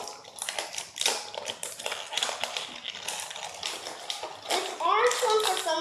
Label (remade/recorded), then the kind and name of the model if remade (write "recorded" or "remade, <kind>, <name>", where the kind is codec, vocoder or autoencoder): recorded